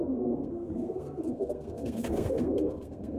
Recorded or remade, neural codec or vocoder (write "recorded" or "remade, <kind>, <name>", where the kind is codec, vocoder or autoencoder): remade, codec, SNAC